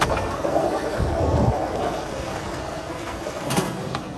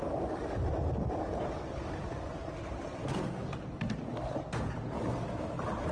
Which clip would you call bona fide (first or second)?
second